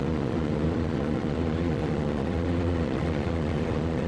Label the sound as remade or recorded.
remade